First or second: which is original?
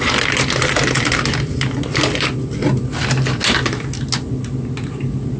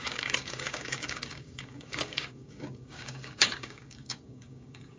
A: first